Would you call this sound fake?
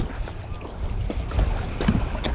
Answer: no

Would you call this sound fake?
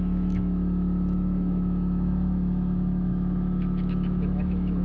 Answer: yes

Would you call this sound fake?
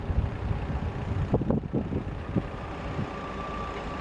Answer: no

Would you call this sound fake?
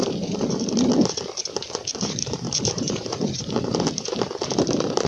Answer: yes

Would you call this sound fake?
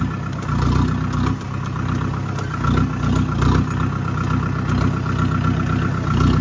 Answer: no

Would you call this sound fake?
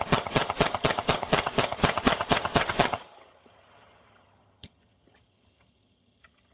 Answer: yes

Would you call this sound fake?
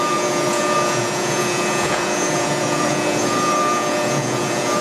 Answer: yes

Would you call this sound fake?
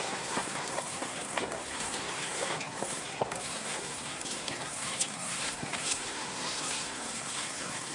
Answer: yes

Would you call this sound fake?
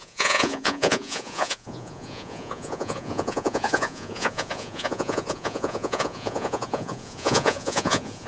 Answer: yes